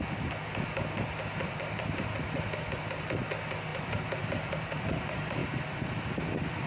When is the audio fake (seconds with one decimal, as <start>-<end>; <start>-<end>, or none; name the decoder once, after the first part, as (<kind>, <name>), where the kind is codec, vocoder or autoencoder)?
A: 3.7-4.8 (vocoder, BigVGAN v2)

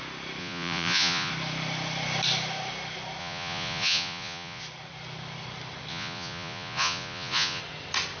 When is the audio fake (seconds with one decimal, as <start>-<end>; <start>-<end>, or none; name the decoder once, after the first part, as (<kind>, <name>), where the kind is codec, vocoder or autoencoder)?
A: 0.4-1.3 (vocoder, Vocos); 3.2-4.6; 5.9-7.6

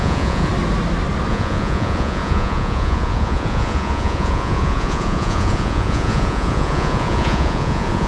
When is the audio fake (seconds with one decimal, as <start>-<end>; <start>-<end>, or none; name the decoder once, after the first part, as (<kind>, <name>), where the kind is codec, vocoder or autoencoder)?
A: 0.0-0.5 (vocoder, Vocos); 1.3-8.1

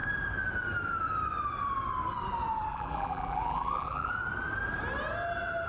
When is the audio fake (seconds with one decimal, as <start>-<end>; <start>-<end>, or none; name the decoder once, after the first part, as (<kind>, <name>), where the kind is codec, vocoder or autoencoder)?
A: 2.7-4.1 (vocoder, BigVGAN v2)

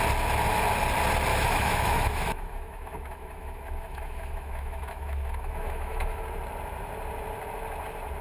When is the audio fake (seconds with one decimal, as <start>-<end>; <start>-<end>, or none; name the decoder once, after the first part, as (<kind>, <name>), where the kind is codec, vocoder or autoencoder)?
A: 1.3-6.2 (autoencoder, DAC-VAE)

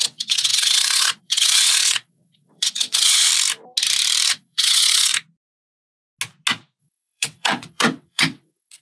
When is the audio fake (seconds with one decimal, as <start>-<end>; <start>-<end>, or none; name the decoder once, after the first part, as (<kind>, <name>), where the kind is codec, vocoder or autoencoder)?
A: 0.0-3.3 (vocoder, WaveNeXt); 4.3-5.1; 6.8-8.8

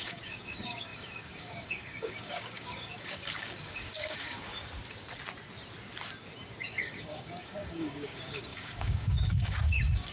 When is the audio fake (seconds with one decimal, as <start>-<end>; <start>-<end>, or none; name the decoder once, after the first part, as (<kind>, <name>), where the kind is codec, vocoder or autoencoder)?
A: 0.0-4.5 (codec, DAC); 6.6-10.1

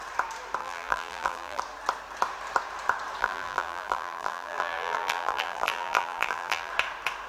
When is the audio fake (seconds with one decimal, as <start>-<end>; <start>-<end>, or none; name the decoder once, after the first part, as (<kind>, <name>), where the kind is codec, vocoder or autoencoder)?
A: 0.6-1.6 (vocoder, BigVGAN v2); 3.2-6.7